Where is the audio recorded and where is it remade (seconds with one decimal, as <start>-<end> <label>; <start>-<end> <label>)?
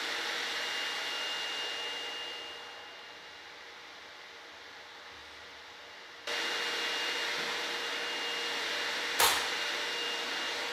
0.0-10.7 recorded